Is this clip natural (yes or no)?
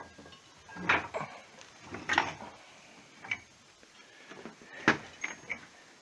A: yes